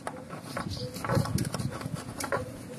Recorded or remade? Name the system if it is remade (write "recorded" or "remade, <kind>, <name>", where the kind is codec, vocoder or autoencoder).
recorded